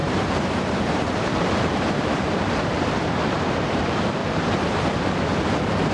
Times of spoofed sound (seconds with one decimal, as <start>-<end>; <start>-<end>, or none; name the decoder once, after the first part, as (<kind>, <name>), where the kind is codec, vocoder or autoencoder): 0.0-4.2 (vocoder, BigVGAN v2)